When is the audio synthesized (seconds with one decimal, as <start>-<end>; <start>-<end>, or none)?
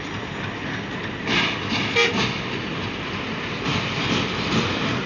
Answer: none